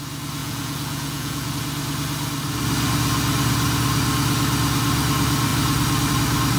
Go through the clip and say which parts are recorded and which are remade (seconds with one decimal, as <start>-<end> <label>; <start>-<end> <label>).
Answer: 0.0-0.4 recorded; 0.4-1.5 remade; 1.5-6.6 recorded